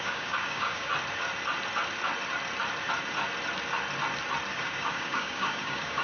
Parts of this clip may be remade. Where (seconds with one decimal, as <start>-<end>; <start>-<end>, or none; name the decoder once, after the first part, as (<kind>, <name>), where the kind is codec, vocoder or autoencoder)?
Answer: 0.0-0.9 (codec, DAC); 4.5-6.0